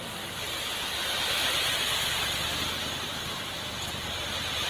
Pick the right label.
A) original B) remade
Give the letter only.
A